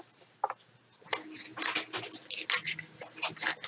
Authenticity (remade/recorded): recorded